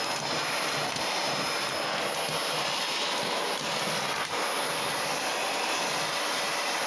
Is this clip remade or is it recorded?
recorded